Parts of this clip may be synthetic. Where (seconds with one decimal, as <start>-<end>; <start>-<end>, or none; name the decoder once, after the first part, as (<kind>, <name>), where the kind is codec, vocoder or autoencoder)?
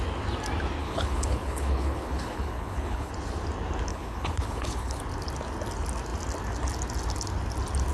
0.8-3.1 (codec, HILCodec); 3.9-5.0